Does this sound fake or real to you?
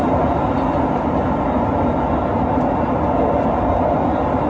real